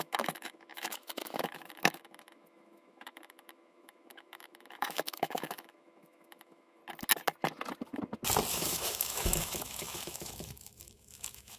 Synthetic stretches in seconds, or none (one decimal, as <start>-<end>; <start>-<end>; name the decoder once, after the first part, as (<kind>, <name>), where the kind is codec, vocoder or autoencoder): 0.0-6.8 (autoencoder, DAC-VAE); 8.5-11.6